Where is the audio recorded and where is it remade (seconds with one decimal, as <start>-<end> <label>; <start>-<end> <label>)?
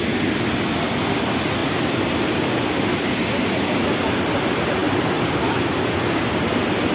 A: 0.0-6.9 recorded